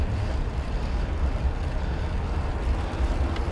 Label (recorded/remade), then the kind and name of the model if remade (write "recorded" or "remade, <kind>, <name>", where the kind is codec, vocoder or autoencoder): recorded